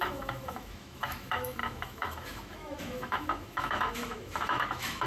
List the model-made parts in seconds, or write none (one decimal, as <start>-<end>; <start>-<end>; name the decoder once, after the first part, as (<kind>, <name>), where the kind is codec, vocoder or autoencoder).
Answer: 0.0-5.1 (autoencoder, DAC-VAE)